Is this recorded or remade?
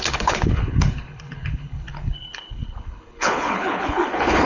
remade